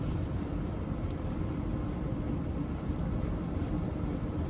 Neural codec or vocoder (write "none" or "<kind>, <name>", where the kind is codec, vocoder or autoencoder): vocoder, BigVGAN v2